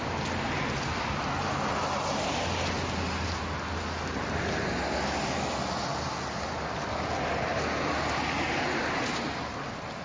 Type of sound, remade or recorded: recorded